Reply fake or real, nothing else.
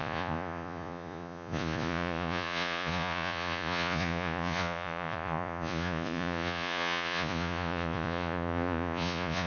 fake